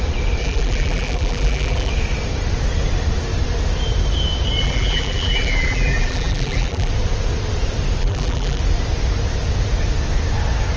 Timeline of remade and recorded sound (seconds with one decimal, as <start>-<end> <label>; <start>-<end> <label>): 0.0-0.4 recorded; 0.4-1.9 remade; 1.9-4.6 recorded; 4.6-6.9 remade; 6.9-8.0 recorded; 8.0-8.6 remade; 8.6-10.8 recorded